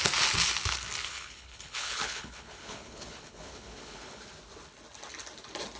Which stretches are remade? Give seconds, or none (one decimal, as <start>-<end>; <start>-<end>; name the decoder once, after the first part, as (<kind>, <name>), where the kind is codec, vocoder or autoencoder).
1.0-4.2 (codec, HILCodec)